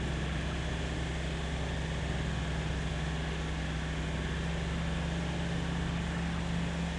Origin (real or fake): real